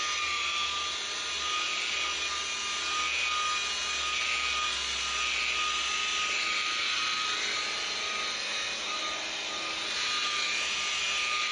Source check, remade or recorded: recorded